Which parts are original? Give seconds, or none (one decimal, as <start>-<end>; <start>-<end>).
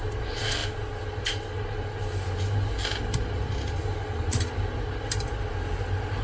0.0-6.2